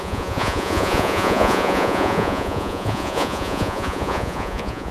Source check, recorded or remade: remade